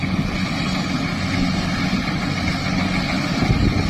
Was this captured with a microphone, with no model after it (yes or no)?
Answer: yes